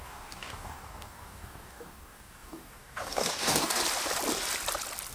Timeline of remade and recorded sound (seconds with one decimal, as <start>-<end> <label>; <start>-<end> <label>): 0.0-3.8 remade; 3.8-5.1 recorded